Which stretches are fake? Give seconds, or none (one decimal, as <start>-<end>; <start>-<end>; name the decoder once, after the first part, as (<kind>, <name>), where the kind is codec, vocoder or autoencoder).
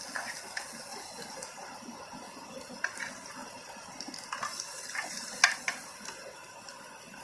3.4-4.0 (vocoder, BigVGAN v2)